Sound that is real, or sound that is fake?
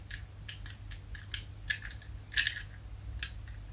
real